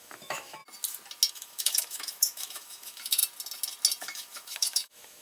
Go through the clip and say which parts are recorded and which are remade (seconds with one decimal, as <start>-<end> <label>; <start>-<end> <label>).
0.0-0.6 remade; 0.6-1.3 recorded; 1.3-3.2 remade; 3.2-4.0 recorded; 4.0-5.2 remade